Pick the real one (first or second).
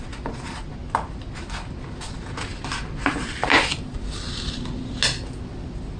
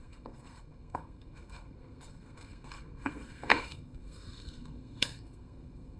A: first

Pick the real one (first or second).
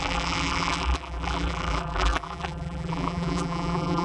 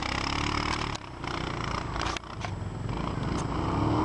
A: second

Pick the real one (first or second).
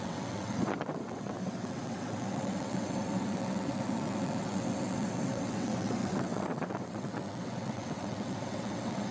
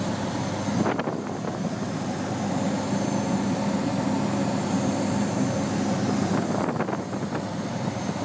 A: second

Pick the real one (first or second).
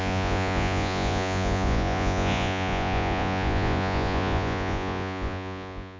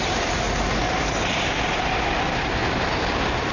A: second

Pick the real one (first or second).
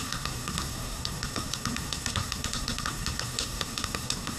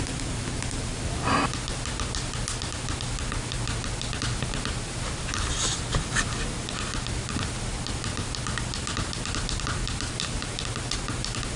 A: second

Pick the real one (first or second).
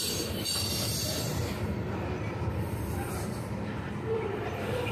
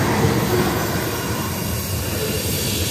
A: second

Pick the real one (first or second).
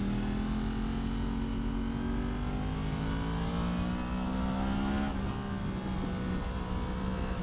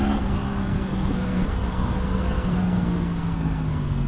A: first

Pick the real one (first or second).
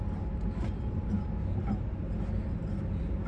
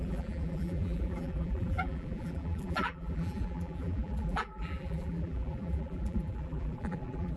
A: first